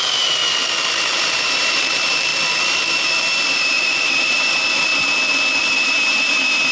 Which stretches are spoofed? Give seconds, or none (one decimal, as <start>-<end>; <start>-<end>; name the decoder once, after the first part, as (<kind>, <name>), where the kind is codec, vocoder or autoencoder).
0.0-0.4 (vocoder, BigVGAN v2); 1.1-2.3; 2.9-4.9; 5.6-6.7

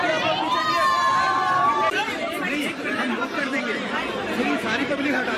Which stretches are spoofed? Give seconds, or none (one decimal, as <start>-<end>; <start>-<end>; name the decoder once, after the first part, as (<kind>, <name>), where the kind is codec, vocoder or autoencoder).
2.0-5.4 (vocoder, BigVGAN v2)